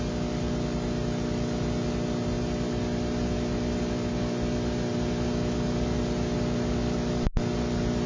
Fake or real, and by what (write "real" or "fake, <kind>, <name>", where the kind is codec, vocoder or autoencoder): real